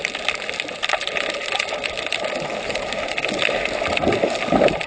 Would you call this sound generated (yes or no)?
no